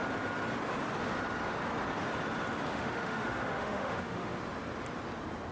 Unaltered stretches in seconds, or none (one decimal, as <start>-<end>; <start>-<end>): 0.0-2.7; 4.4-5.5